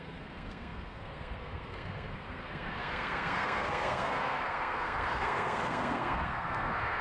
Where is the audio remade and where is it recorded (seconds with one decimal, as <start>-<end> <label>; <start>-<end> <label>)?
0.0-7.0 remade